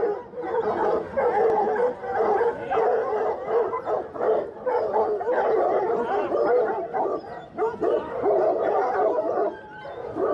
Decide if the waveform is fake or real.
real